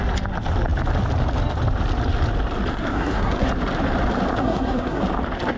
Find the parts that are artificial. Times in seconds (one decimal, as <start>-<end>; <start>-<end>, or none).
2.7-3.5; 4.4-5.0